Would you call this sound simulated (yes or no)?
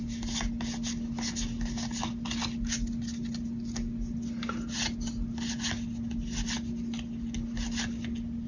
no